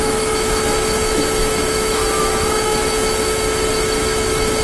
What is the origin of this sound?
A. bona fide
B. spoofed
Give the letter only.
B